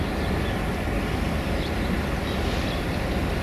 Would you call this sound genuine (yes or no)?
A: yes